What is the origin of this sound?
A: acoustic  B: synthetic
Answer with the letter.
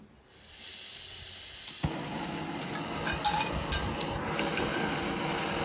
A